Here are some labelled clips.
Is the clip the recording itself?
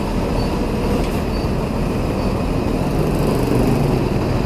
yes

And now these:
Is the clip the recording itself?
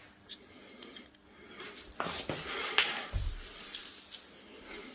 yes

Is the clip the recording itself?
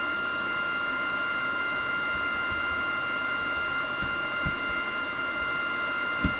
yes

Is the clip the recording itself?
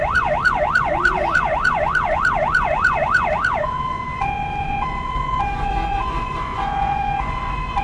no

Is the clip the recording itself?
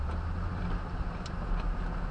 yes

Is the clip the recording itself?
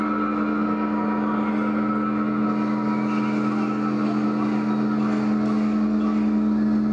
yes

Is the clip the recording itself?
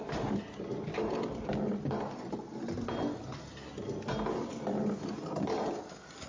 yes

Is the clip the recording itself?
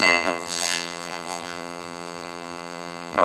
no